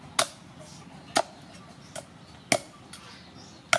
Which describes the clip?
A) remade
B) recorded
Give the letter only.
B